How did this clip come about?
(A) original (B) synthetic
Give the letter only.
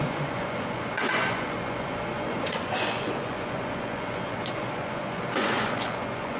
B